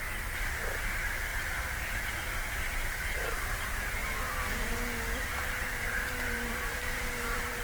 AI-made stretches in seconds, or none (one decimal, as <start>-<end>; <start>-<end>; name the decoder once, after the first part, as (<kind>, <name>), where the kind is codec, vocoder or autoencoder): 0.0-1.3 (vocoder, BigVGAN v2); 3.4-4.0; 5.3-7.6

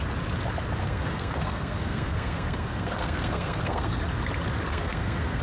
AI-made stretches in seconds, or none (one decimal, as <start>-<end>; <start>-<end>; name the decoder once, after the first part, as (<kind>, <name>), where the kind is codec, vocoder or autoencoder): 0.8-4.0 (codec, SNAC); 4.7-5.4

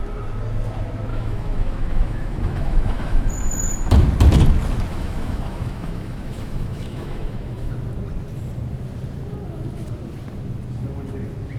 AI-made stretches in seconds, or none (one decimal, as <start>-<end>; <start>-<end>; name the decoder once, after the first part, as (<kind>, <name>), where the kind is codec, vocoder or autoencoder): 1.1-3.3 (autoencoder, DAC-VAE); 4.9-7.7